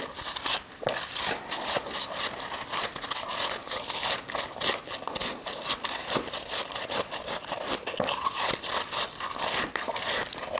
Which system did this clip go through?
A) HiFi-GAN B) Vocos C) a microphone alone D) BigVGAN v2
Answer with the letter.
C